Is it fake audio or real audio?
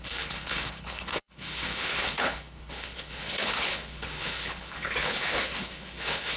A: fake